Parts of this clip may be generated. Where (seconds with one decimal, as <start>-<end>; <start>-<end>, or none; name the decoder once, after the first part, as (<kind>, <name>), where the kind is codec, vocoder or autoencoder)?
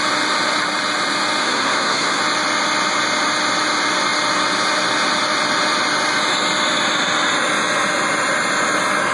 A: 1.4-2.2 (codec, SNAC)